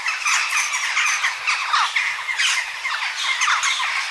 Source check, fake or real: real